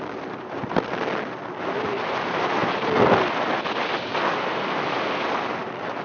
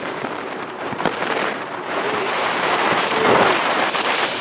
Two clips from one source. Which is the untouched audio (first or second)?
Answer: first